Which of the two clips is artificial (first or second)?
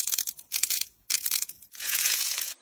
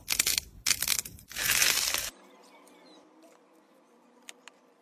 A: first